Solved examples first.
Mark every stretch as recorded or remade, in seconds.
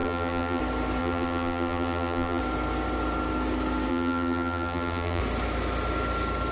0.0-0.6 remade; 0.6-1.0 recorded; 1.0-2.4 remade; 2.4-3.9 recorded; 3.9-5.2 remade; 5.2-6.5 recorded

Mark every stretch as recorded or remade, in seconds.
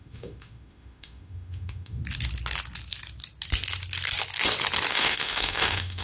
0.0-2.0 remade; 2.0-4.9 recorded; 4.9-6.0 remade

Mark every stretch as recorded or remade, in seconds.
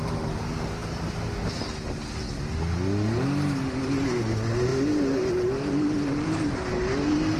0.0-7.4 recorded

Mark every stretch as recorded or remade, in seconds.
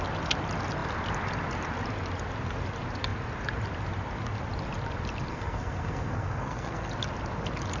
0.0-5.3 recorded; 5.3-6.9 remade; 6.9-7.8 recorded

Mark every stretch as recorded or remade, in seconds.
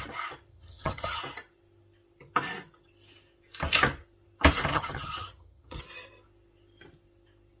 0.0-0.5 recorded; 0.5-1.2 remade; 1.2-4.7 recorded; 4.7-5.8 remade; 5.8-7.6 recorded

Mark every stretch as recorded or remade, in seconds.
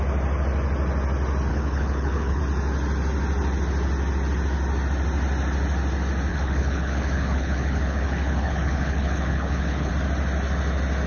0.0-1.5 recorded; 1.5-2.4 remade; 2.4-6.3 recorded; 6.3-9.9 remade; 9.9-11.1 recorded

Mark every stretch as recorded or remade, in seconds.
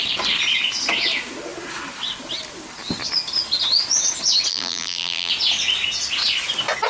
0.0-4.5 recorded; 4.5-5.3 remade; 5.3-6.9 recorded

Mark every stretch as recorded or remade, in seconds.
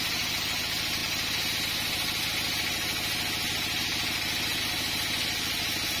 0.0-6.0 recorded